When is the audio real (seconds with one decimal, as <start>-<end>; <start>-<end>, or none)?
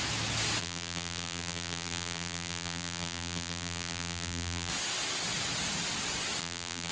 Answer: 0.0-0.6; 4.7-6.4